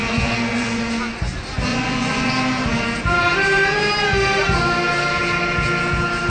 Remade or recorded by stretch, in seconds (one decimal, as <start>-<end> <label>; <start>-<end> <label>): 0.0-0.9 remade; 0.9-1.7 recorded; 1.7-2.3 remade; 2.3-6.3 recorded

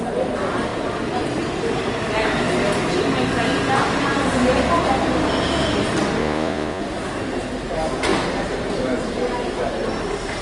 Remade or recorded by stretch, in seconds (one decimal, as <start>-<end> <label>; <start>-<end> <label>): 0.0-6.2 recorded; 6.2-6.8 remade; 6.8-10.4 recorded

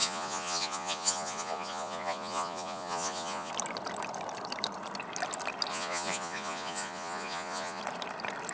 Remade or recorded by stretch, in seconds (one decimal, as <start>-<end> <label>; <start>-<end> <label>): 0.0-3.5 remade; 3.5-5.7 recorded; 5.7-7.8 remade; 7.8-8.5 recorded

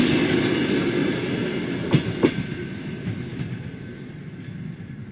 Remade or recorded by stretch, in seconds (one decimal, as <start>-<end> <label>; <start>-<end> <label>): 0.0-5.1 recorded